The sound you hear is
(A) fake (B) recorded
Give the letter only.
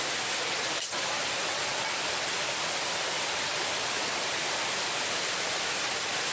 B